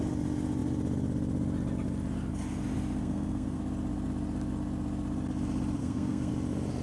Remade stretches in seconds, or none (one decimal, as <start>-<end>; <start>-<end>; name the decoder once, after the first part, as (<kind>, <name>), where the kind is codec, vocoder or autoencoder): 3.0-3.6 (codec, SNAC); 5.8-6.3